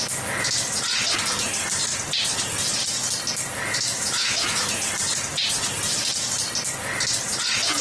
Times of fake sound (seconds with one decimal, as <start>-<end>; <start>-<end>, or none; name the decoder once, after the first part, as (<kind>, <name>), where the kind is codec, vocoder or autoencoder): 3.7-4.7 (autoencoder, DAC-VAE)